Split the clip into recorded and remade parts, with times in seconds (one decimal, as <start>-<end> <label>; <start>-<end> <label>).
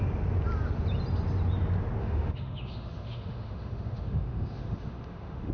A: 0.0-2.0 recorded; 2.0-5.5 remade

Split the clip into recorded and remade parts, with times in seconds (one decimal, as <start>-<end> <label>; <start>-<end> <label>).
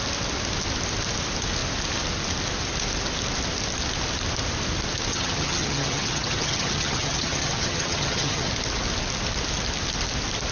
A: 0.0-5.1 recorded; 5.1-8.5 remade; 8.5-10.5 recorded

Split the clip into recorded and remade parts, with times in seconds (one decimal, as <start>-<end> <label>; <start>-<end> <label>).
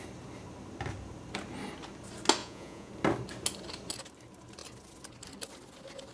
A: 0.0-2.4 recorded; 2.4-2.9 remade; 2.9-6.1 recorded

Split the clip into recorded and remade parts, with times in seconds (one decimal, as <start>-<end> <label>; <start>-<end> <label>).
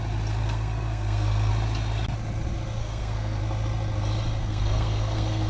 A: 0.0-0.4 recorded; 0.4-1.5 remade; 1.5-2.8 recorded; 2.8-3.4 remade; 3.4-4.4 recorded; 4.4-5.5 remade